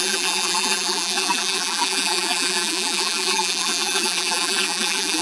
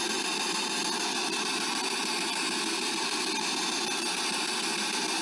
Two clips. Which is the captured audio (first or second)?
second